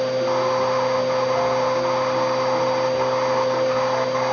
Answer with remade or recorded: recorded